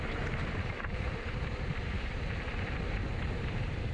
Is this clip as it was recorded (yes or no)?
no